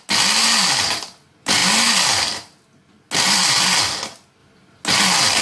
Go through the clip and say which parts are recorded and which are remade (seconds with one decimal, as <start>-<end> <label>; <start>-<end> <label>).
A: 0.0-5.4 recorded